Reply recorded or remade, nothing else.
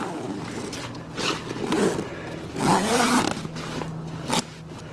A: recorded